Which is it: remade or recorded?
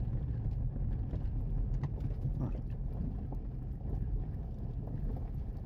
recorded